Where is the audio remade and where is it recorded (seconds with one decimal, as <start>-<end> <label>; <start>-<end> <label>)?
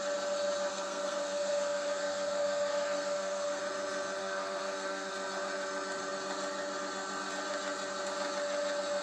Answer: 0.0-0.7 recorded; 0.7-3.6 remade; 3.6-4.2 recorded; 4.2-5.1 remade; 5.1-9.0 recorded